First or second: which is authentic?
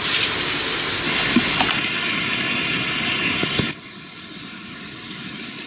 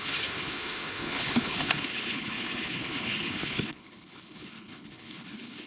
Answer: first